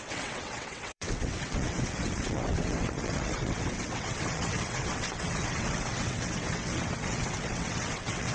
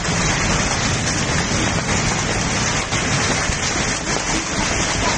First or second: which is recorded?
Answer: second